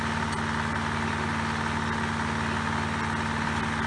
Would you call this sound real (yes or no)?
yes